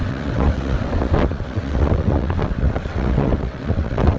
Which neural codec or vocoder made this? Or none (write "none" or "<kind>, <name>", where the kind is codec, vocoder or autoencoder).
vocoder, WaveNeXt